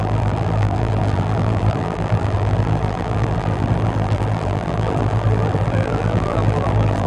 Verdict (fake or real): fake